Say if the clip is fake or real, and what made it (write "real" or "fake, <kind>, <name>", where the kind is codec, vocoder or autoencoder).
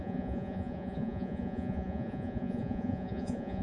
fake, vocoder, Vocos